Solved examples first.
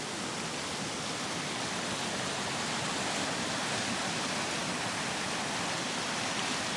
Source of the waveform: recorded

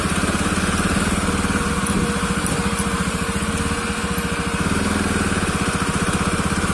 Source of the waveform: recorded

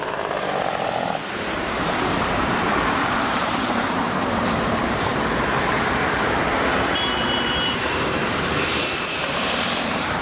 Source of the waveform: remade